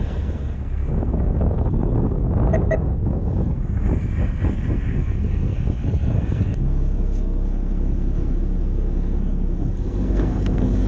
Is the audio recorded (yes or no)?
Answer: no